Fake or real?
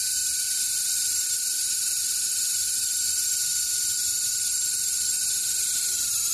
real